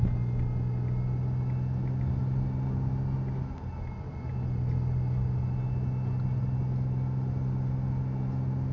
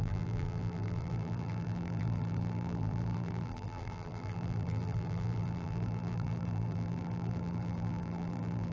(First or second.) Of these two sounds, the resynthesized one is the second